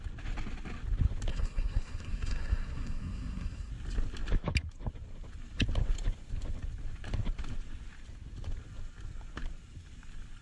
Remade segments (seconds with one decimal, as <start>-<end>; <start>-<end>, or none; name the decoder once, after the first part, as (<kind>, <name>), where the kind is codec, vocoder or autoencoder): 1.3-3.7 (codec, SNAC)